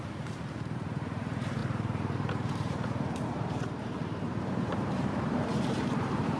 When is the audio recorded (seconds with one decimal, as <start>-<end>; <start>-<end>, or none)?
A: none